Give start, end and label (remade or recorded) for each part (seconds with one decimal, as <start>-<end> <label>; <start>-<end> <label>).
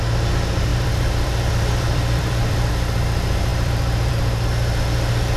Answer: 0.0-0.7 recorded; 0.7-2.7 remade; 2.7-3.5 recorded; 3.5-4.2 remade; 4.2-5.4 recorded